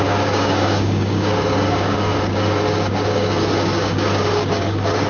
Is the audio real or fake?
fake